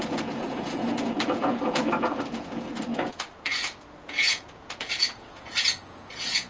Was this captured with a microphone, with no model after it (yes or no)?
no